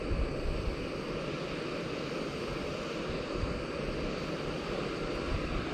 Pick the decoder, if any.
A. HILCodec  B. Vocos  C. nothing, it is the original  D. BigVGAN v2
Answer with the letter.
C